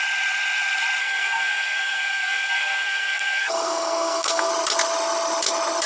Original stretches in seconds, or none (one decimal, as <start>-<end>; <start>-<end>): 0.0-1.0; 4.5-5.9